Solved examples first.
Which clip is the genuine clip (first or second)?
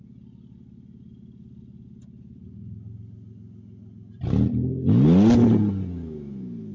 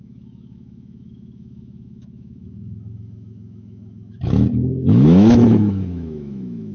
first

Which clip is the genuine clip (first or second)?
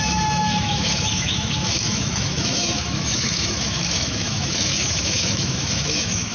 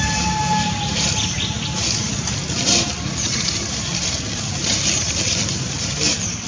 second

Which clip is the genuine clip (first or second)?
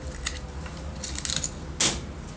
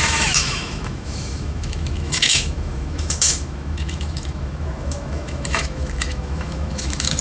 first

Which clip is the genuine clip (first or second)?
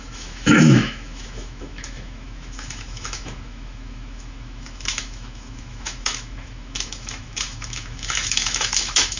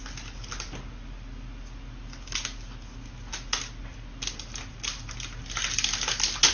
second